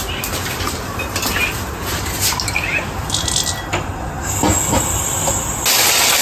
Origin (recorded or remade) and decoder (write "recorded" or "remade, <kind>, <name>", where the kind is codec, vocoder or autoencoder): recorded